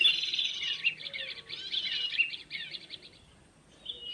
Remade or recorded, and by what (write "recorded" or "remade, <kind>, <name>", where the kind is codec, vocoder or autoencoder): recorded